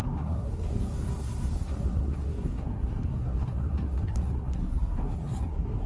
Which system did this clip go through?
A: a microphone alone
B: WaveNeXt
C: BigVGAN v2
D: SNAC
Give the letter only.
D